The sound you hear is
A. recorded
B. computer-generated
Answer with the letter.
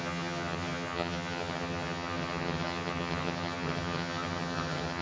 B